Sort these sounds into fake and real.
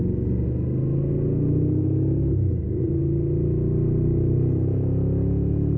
real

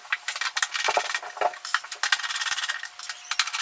real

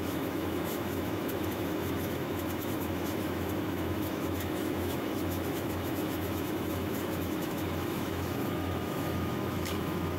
fake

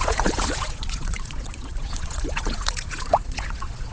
fake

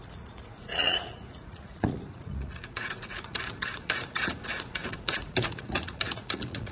fake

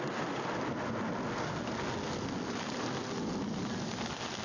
real